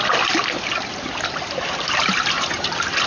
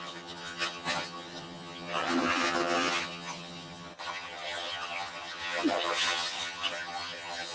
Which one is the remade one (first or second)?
second